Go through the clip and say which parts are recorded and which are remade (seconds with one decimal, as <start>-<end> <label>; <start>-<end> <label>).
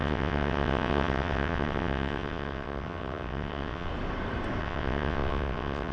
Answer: 0.0-3.9 remade; 3.9-4.6 recorded; 4.6-5.9 remade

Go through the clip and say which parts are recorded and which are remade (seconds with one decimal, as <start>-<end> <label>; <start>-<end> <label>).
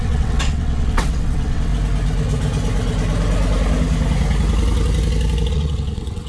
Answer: 0.0-1.7 remade; 1.7-5.5 recorded; 5.5-6.3 remade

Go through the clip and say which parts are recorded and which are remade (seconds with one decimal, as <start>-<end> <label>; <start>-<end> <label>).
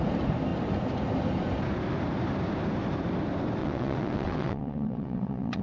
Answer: 0.0-3.6 recorded; 3.6-5.6 remade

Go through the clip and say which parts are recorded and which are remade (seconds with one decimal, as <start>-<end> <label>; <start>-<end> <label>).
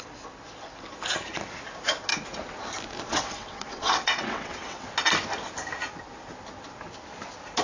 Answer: 0.0-3.1 recorded; 3.1-4.9 remade; 4.9-7.6 recorded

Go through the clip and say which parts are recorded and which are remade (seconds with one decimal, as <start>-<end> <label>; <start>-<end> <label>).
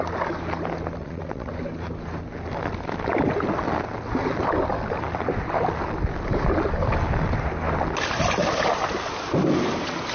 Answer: 0.0-1.0 recorded; 1.0-1.5 remade; 1.5-10.1 recorded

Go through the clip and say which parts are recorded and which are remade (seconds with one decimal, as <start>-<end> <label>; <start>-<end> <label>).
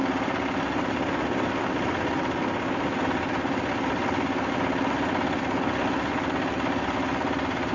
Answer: 0.0-7.7 recorded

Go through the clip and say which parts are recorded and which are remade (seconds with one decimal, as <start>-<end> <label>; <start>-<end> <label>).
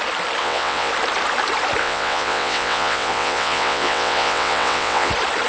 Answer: 0.0-0.4 recorded; 0.4-0.9 remade; 0.9-1.8 recorded; 1.8-5.1 remade; 5.1-5.5 recorded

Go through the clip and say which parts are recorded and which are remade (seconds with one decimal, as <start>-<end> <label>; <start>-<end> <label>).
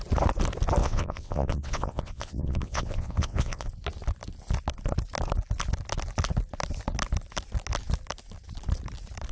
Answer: 0.0-0.8 recorded; 0.8-3.7 remade; 3.7-9.3 recorded